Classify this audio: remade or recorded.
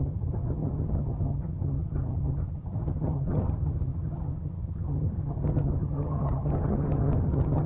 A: remade